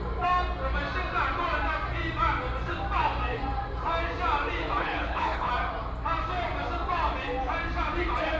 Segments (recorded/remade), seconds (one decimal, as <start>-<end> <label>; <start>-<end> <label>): 0.0-4.8 recorded; 4.8-5.5 remade; 5.5-8.4 recorded